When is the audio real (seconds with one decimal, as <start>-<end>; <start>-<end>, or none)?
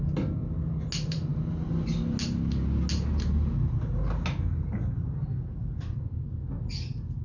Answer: 0.0-7.2